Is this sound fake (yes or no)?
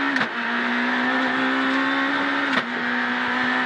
no